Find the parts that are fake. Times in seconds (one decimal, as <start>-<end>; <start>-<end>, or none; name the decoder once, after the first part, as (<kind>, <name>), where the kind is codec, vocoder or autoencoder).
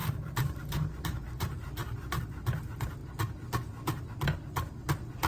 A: 0.0-2.2 (vocoder, BigVGAN v2)